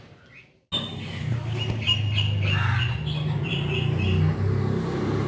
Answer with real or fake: real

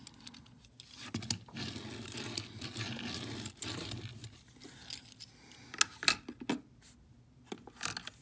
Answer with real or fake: real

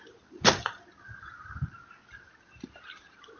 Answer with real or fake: real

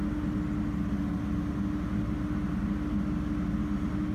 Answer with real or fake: real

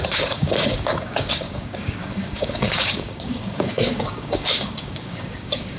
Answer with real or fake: fake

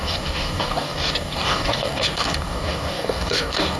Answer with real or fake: fake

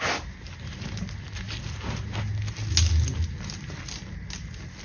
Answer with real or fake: real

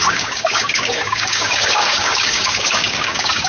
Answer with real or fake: fake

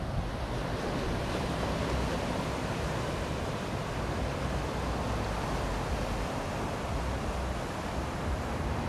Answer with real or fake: real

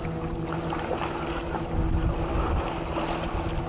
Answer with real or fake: real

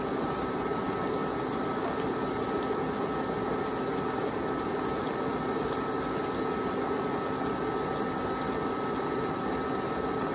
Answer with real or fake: real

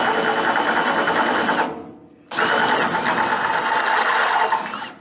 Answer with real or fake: real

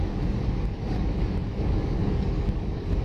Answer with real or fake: fake